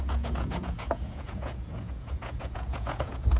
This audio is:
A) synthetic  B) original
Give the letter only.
A